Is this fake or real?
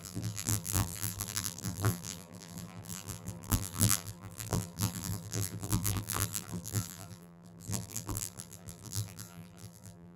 fake